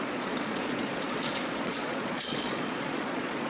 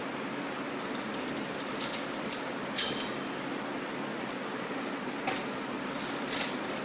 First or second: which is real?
second